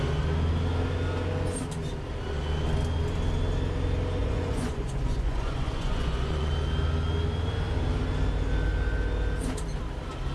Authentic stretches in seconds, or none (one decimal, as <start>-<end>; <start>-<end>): 0.0-4.2; 6.5-10.3